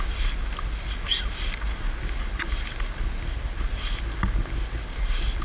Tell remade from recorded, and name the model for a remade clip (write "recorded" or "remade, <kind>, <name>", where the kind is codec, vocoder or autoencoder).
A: recorded